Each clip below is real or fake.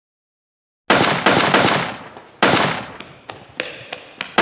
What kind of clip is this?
real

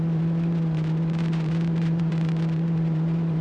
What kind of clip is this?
fake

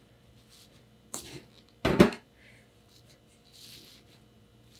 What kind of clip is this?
real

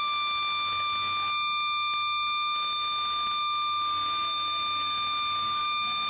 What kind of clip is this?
real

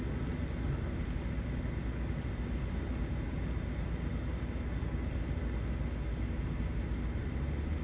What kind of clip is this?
real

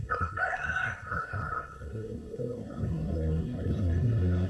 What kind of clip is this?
fake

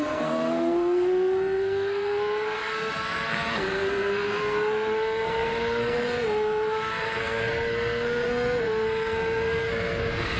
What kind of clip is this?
fake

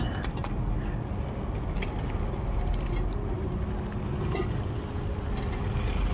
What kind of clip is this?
real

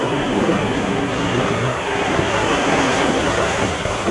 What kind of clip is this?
fake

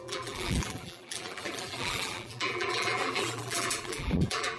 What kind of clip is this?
fake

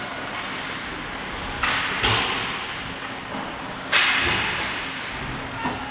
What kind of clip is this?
real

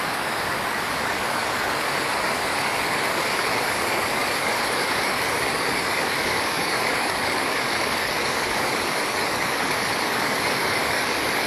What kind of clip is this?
fake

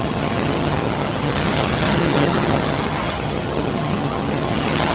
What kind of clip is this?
fake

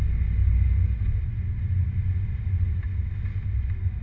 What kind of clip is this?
real